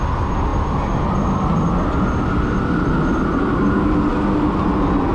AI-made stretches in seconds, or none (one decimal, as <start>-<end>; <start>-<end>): none